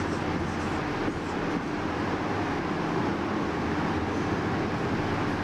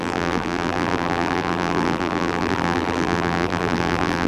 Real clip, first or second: first